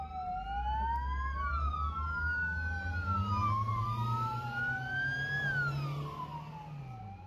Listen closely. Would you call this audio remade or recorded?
recorded